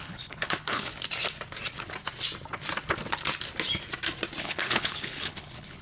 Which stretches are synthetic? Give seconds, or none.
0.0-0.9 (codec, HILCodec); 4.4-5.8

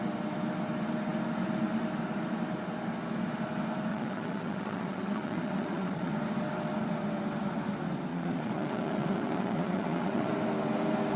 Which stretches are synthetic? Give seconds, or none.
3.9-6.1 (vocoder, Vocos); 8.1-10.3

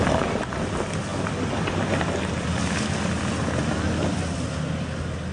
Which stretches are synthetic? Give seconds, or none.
none